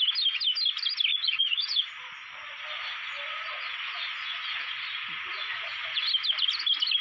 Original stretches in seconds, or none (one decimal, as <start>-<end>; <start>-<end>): 0.0-1.1; 2.1-3.3; 6.0-7.0